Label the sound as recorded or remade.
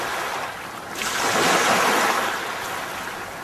recorded